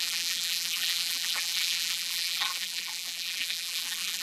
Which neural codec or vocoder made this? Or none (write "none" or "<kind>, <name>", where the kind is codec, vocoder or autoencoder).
vocoder, BigVGAN v2